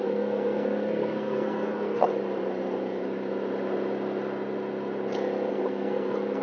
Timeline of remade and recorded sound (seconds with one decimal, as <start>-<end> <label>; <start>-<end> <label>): 0.0-2.1 remade; 2.1-5.5 recorded; 5.5-6.4 remade